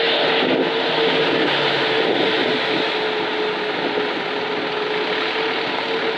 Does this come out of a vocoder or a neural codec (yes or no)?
no